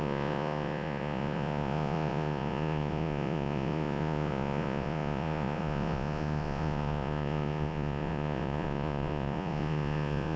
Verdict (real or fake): fake